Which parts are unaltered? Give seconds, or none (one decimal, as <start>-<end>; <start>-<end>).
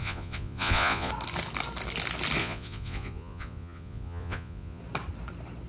1.1-2.4; 4.8-5.7